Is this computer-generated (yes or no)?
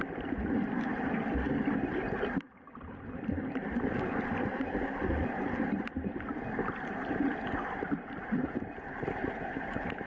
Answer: no